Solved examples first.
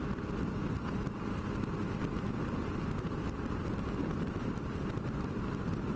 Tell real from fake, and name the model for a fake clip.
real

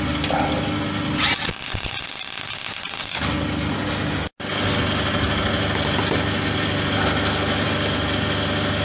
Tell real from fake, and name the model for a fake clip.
real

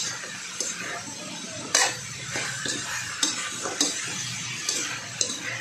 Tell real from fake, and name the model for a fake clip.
fake, vocoder, BigVGAN v2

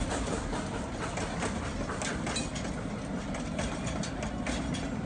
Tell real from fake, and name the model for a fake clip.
real